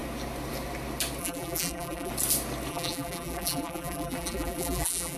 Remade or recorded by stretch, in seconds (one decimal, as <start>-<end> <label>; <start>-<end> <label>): 0.0-1.2 recorded; 1.2-2.1 remade; 2.1-2.7 recorded; 2.7-5.2 remade